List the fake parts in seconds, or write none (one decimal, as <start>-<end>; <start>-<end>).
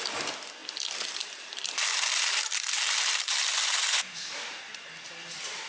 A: none